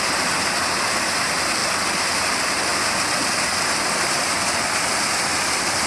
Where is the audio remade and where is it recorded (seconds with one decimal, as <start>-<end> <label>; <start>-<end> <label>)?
0.0-5.9 recorded

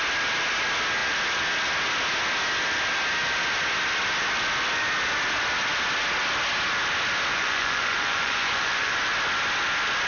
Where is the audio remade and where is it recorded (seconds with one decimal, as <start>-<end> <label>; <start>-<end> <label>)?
0.0-7.3 recorded; 7.3-9.0 remade; 9.0-10.1 recorded

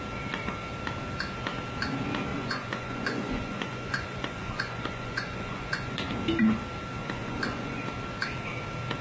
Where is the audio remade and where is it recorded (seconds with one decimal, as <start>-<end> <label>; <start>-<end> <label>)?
0.0-2.3 recorded; 2.3-6.1 remade; 6.1-7.0 recorded; 7.0-7.8 remade; 7.8-9.0 recorded